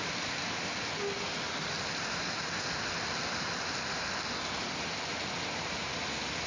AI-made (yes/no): no